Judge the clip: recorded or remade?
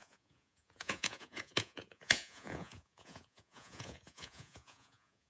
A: remade